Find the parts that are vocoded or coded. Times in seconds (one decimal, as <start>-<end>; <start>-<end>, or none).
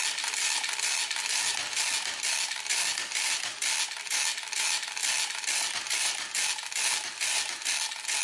none